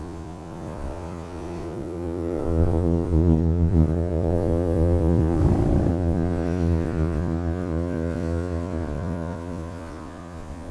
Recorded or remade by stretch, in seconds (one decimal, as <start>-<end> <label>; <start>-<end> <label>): 0.0-5.4 remade; 5.4-5.9 recorded; 5.9-10.7 remade